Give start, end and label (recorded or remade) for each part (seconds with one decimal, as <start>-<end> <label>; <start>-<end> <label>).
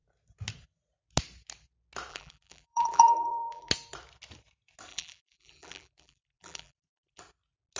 0.0-2.1 recorded; 2.1-3.7 remade; 3.7-4.9 recorded; 4.9-7.2 remade; 7.2-7.8 recorded